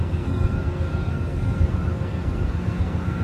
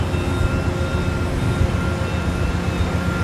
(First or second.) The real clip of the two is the second